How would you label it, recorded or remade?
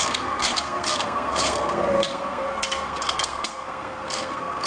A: remade